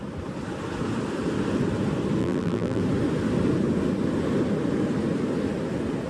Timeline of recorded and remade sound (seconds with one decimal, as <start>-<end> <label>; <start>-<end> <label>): 0.0-2.2 recorded; 2.2-2.8 remade; 2.8-6.1 recorded